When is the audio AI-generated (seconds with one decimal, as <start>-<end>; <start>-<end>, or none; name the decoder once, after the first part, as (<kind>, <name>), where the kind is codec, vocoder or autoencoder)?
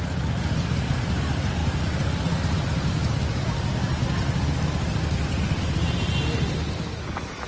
none